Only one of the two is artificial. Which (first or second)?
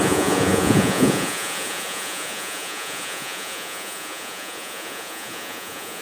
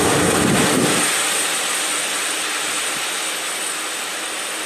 first